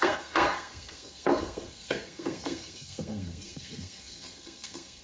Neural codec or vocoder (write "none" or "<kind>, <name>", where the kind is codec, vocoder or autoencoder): codec, SNAC